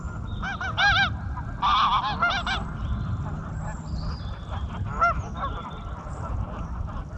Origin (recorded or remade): recorded